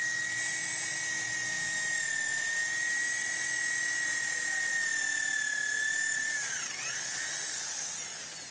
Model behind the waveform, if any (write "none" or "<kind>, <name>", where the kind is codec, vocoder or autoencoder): none